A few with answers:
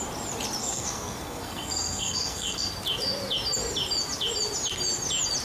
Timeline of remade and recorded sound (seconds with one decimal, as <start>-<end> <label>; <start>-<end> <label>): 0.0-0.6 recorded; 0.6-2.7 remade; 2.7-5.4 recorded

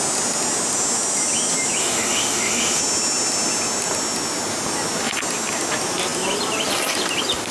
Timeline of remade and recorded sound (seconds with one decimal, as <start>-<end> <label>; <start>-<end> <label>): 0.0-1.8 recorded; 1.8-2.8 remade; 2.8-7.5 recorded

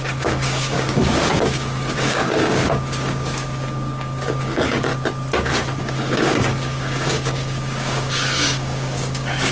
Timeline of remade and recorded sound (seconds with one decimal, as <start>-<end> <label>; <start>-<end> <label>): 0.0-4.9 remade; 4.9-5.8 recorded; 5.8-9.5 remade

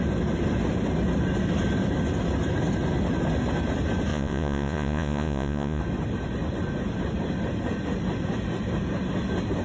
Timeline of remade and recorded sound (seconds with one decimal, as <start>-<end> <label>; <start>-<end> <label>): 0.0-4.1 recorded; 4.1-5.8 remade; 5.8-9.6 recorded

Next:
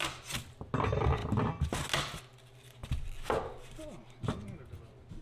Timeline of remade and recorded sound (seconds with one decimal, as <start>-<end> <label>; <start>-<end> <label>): 0.0-5.2 recorded

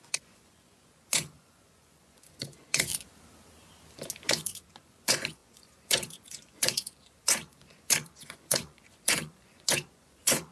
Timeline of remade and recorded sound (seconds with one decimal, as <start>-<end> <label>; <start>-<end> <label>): 0.0-2.9 remade; 2.9-4.3 recorded; 4.3-10.5 remade

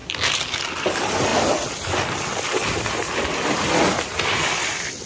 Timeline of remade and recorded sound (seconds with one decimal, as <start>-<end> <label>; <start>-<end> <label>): 0.0-0.6 recorded; 0.6-5.1 remade